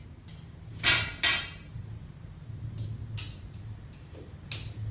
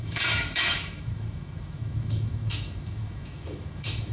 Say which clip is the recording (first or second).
first